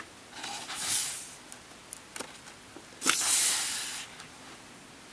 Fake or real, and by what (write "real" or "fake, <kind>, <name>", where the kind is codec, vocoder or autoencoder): real